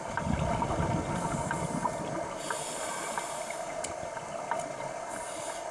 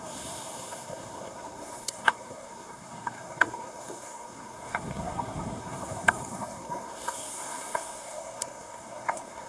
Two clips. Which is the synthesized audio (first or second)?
second